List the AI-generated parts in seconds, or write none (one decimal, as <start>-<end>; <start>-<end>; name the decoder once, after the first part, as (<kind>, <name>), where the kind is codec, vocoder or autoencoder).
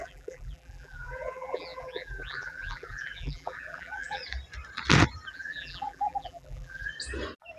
0.0-4.2 (vocoder, BigVGAN v2); 5.3-6.9